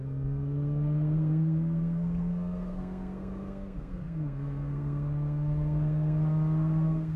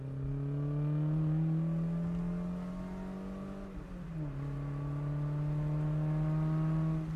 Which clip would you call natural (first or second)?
second